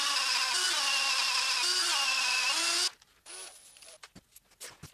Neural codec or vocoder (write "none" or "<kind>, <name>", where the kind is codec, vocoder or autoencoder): none